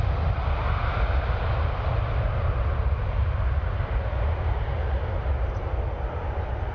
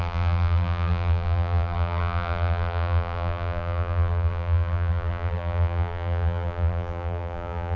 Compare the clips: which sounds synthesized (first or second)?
second